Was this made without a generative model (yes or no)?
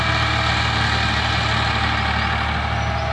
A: yes